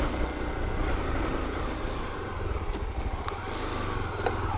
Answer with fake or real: real